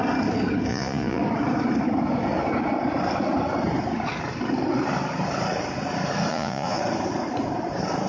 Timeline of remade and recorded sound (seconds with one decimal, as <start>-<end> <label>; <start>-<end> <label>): 0.0-0.7 recorded; 0.7-1.2 remade; 1.2-6.3 recorded; 6.3-6.8 remade; 6.8-8.1 recorded